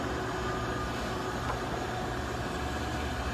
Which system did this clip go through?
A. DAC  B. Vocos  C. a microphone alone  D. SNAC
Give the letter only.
C